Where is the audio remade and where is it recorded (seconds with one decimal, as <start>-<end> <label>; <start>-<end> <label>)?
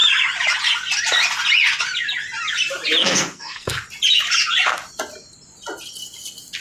0.0-3.0 recorded; 3.0-3.8 remade; 3.8-6.6 recorded